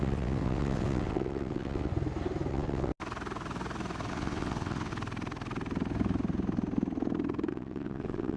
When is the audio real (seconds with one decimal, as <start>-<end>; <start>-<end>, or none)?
1.9-2.5; 2.9-4.1; 4.9-7.5